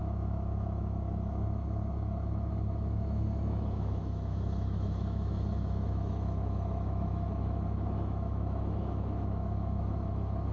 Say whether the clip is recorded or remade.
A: remade